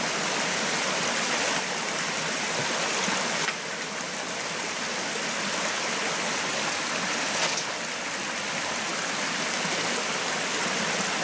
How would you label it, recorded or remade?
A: recorded